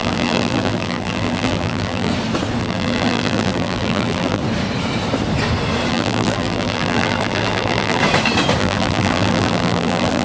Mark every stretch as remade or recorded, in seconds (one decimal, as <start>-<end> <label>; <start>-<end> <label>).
0.0-2.1 remade; 2.1-2.6 recorded; 2.6-4.4 remade; 4.4-5.9 recorded; 5.9-8.0 remade; 8.0-8.6 recorded; 8.6-10.2 remade